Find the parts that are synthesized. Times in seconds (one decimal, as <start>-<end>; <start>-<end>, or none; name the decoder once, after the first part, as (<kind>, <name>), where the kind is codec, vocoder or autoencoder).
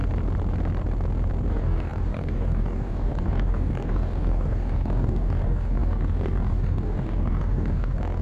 1.5-8.2 (codec, DAC)